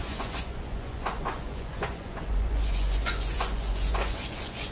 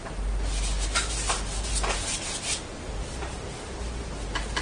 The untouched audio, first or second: second